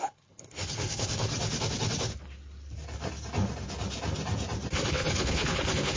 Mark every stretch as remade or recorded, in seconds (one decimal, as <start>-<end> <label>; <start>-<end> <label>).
0.0-1.3 remade; 1.3-4.9 recorded; 4.9-6.0 remade